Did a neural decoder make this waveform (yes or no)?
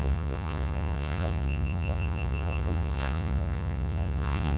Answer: yes